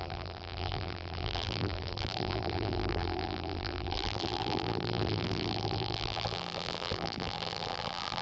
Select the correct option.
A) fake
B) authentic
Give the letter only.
A